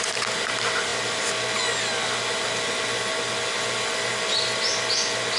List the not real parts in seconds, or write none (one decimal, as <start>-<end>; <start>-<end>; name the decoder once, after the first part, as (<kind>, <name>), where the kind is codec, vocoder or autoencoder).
none